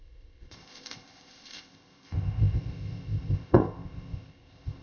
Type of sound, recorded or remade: remade